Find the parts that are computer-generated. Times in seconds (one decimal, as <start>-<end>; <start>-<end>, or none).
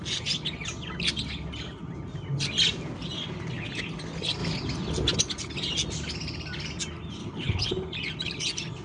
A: 7.2-7.7